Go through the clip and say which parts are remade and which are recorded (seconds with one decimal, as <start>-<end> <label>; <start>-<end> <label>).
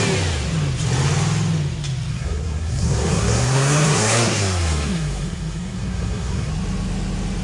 0.0-2.1 recorded; 2.1-6.5 remade; 6.5-7.4 recorded